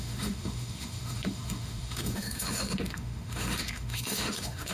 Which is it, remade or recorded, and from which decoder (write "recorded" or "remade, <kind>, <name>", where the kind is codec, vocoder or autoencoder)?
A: remade, autoencoder, DAC-VAE